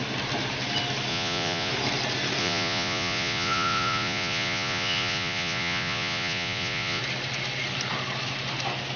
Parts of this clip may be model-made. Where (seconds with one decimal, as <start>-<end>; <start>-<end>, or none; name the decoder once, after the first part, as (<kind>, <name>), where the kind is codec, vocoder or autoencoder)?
1.1-1.7 (vocoder, Vocos); 2.4-7.0